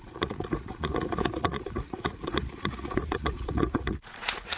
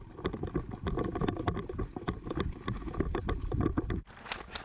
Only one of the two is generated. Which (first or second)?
first